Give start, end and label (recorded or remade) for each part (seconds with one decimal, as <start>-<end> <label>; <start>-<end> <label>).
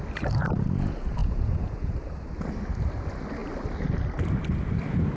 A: 0.0-1.2 recorded; 1.2-1.9 remade; 1.9-5.2 recorded